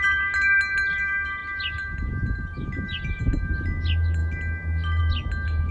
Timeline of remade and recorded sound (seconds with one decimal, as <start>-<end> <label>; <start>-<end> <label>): 0.0-1.4 recorded; 1.4-3.2 remade; 3.2-5.7 recorded